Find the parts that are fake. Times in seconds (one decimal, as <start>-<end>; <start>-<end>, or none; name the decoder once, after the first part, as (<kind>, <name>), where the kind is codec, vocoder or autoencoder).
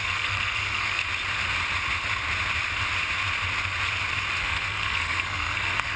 0.0-1.0 (codec, SNAC); 4.4-6.0